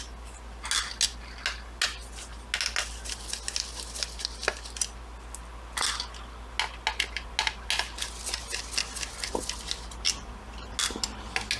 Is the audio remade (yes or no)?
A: no